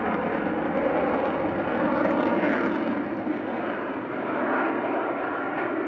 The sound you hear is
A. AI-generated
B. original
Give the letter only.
B